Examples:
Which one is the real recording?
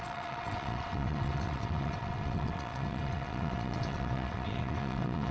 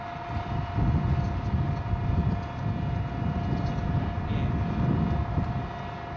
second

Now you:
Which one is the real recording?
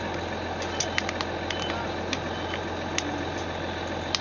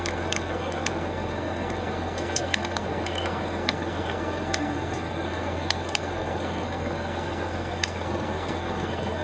first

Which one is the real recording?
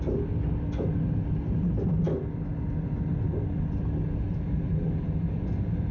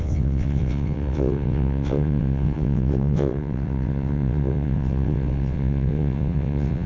first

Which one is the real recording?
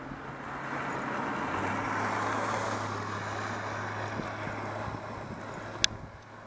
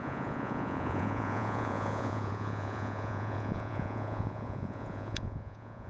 first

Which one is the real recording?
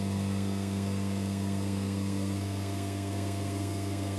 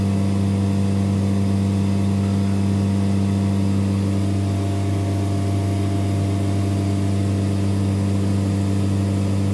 second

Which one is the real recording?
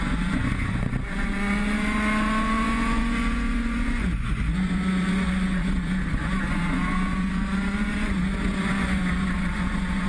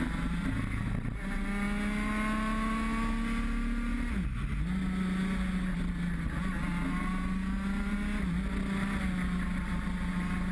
second